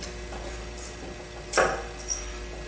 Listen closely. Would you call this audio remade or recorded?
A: recorded